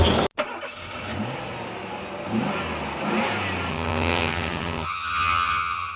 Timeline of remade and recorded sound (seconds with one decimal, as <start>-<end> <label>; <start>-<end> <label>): 0.0-3.7 recorded; 3.7-6.0 remade